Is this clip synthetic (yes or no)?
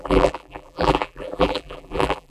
yes